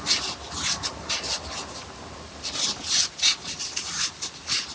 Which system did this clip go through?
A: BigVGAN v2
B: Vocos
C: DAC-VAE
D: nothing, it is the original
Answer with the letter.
D